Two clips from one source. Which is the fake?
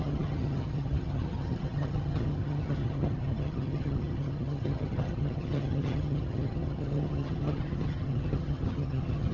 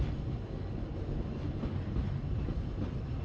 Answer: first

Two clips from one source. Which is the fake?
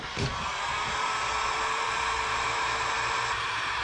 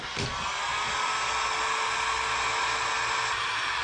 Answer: first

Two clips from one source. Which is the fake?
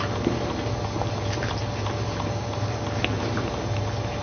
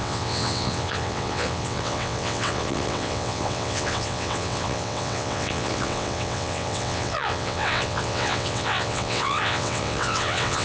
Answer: second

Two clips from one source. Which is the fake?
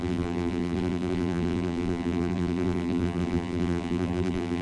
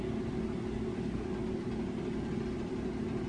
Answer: first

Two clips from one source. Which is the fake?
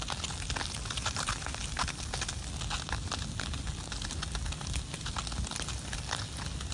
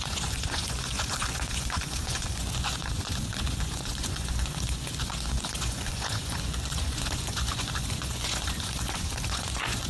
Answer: second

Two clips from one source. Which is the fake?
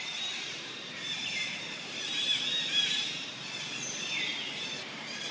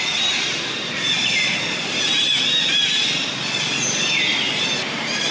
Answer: first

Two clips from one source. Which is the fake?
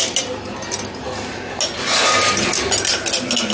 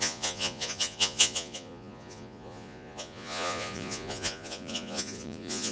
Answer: second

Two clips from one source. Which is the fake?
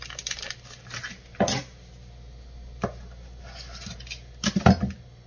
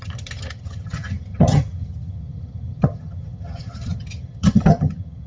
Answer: second